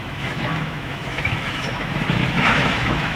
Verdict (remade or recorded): remade